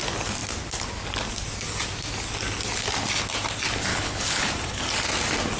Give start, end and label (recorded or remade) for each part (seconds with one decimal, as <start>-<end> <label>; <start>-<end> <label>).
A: 0.0-3.9 recorded; 3.9-4.5 remade; 4.5-5.6 recorded